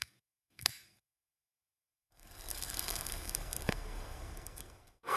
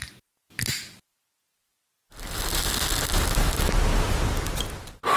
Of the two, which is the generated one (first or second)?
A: first